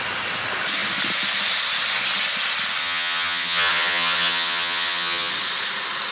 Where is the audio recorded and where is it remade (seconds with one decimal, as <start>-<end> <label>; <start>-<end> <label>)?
0.0-2.8 recorded; 2.8-5.3 remade; 5.3-6.1 recorded